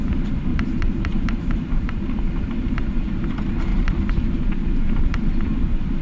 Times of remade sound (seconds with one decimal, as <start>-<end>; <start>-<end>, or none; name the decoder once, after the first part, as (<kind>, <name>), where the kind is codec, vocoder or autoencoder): 0.5-2.0 (vocoder, BigVGAN v2); 3.7-5.6